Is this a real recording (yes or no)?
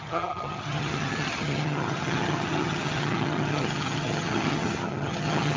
no